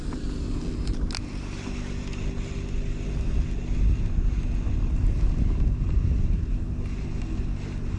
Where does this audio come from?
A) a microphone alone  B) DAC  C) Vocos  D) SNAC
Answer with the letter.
A